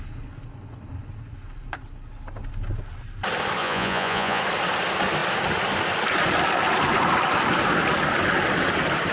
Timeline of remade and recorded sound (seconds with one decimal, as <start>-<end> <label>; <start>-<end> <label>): 0.0-3.6 recorded; 3.6-4.4 remade; 4.4-9.1 recorded